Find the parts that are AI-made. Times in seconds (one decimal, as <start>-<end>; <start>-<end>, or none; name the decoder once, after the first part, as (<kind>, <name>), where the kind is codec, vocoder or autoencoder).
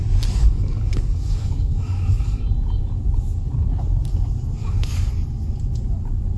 0.4-2.4 (codec, DAC); 4.6-5.1